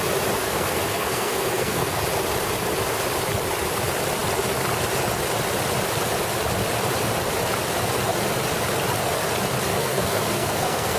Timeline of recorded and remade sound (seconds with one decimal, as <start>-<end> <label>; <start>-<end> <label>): 0.0-0.4 recorded; 0.4-2.0 remade; 2.0-9.7 recorded; 9.7-11.0 remade